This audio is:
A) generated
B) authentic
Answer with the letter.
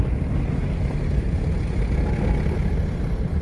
B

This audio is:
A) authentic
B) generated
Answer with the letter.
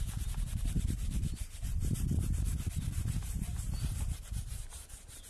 B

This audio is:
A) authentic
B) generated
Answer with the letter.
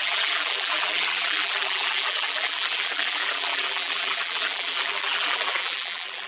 B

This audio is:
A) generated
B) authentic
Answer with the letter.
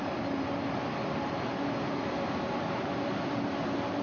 A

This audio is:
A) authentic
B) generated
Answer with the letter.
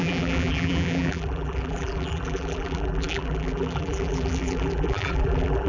B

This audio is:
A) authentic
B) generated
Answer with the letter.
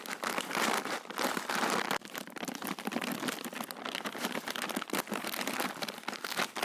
A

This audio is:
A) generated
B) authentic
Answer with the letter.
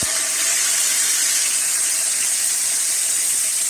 A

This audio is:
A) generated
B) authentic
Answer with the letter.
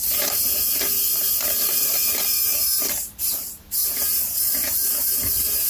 A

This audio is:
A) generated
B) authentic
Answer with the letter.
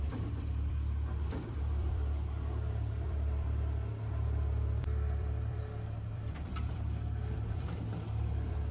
A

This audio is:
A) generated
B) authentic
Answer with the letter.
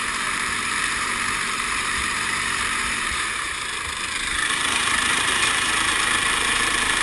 A